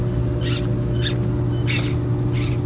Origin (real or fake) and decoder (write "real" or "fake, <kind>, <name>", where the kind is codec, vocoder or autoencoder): real